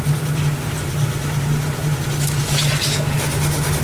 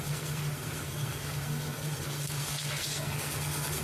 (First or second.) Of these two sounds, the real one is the first